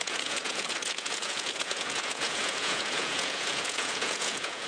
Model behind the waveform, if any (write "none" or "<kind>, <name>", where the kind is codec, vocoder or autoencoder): vocoder, Vocos